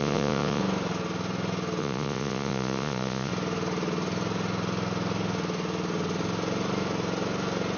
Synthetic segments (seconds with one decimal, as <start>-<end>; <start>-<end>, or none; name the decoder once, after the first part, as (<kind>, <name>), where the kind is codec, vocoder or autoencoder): 0.0-0.6 (vocoder, Vocos); 1.8-3.3